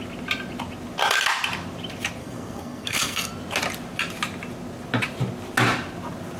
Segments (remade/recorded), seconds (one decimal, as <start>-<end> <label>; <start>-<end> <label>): 0.0-2.2 recorded; 2.2-3.3 remade; 3.3-6.4 recorded